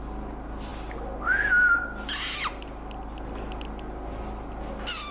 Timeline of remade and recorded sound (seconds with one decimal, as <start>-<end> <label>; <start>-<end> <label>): 0.0-5.1 recorded